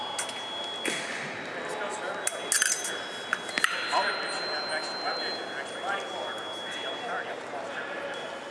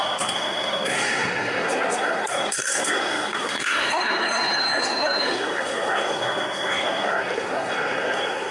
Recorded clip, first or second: first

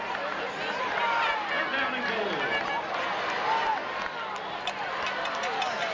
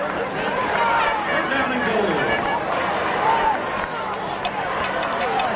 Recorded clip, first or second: first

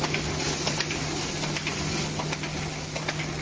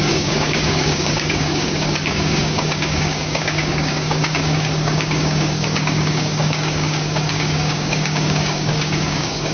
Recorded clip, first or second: first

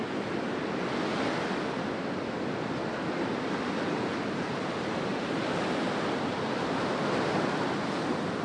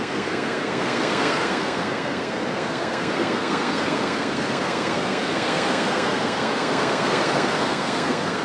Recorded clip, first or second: first